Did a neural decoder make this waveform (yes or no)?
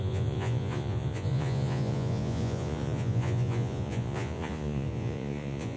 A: yes